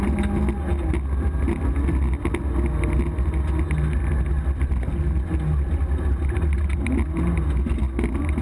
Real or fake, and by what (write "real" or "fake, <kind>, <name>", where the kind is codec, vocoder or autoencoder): real